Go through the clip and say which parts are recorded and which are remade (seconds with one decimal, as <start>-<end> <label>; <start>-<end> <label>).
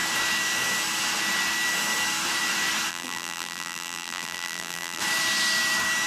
0.0-2.9 recorded; 2.9-5.0 remade; 5.0-6.1 recorded